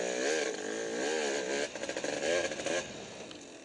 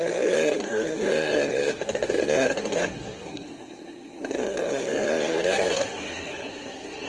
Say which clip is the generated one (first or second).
second